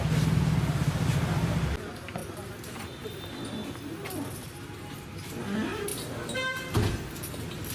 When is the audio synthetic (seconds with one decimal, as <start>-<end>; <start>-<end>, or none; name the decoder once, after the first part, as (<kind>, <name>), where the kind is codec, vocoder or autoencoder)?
none